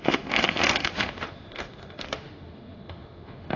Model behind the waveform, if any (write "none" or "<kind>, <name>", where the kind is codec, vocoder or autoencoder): autoencoder, DAC-VAE